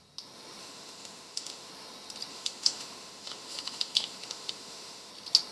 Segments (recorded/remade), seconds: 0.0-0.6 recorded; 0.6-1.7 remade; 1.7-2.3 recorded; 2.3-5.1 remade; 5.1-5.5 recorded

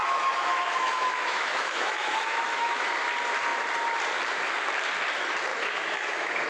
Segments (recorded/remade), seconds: 0.0-2.9 remade; 2.9-5.5 recorded; 5.5-6.5 remade

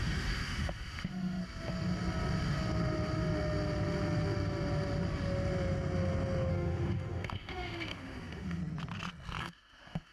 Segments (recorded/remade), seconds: 0.0-1.4 remade; 1.4-6.5 recorded; 6.5-8.6 remade; 8.6-9.4 recorded; 9.4-10.1 remade

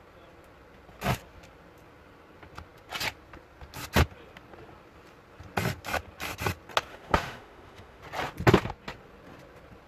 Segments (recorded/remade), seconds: 0.0-6.9 recorded; 6.9-8.0 remade; 8.0-9.9 recorded

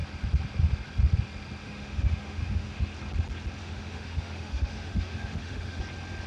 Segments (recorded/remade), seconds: 0.0-1.6 recorded; 1.6-2.8 remade; 2.8-3.6 recorded; 3.6-5.8 remade; 5.8-6.3 recorded

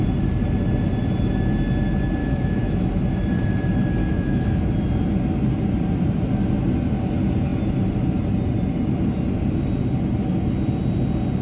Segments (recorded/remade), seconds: 0.0-2.2 recorded; 2.2-3.0 remade; 3.0-4.0 recorded; 4.0-4.6 remade; 4.6-11.4 recorded

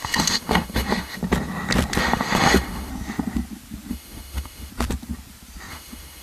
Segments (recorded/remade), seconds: 0.0-1.2 remade; 1.2-2.0 recorded; 2.0-2.9 remade; 2.9-3.9 recorded; 3.9-4.7 remade; 4.7-5.7 recorded; 5.7-6.2 remade